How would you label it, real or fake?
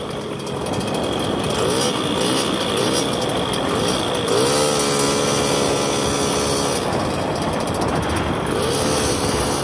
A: real